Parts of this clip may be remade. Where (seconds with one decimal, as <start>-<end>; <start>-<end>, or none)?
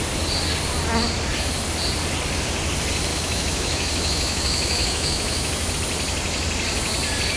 3.1-5.7